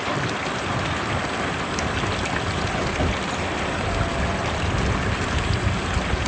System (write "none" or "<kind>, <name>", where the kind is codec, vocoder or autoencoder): none